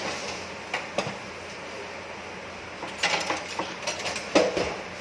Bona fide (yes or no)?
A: yes